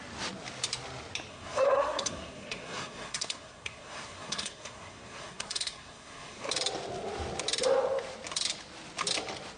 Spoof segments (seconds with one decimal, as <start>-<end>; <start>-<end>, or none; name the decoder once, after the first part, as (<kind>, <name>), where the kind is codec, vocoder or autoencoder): 1.3-6.5 (codec, SNAC)